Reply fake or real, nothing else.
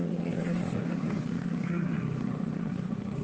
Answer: fake